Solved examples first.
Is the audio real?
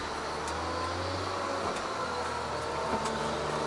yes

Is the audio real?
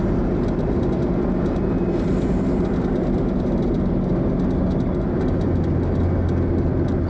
yes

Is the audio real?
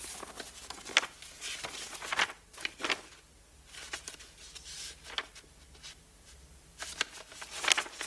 yes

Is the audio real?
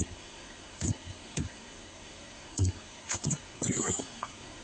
no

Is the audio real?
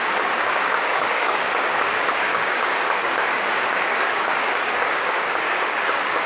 no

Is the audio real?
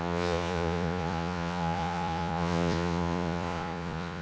no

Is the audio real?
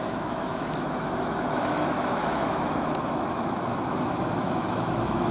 no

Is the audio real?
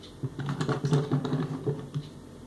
yes